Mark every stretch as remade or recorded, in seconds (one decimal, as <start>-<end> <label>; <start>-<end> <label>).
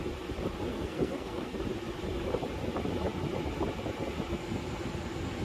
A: 0.0-0.7 recorded; 0.7-1.6 remade; 1.6-5.4 recorded